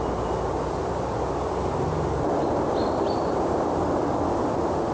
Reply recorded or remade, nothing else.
remade